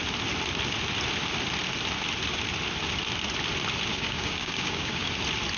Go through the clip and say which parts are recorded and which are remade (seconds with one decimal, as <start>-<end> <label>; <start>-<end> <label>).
0.0-3.9 recorded; 3.9-5.1 remade; 5.1-5.6 recorded